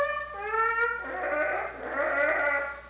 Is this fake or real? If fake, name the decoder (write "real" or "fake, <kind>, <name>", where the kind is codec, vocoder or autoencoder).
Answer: real